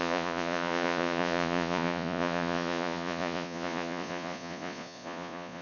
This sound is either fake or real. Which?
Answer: fake